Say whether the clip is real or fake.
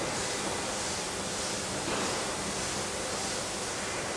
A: real